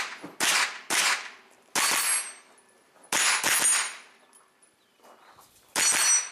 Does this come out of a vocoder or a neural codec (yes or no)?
no